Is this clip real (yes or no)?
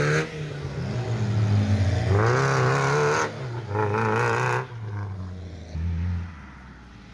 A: yes